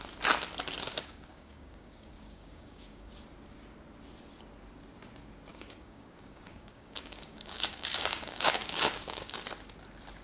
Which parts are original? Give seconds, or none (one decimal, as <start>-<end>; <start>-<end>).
0.0-0.9; 3.1-5.5; 9.4-10.2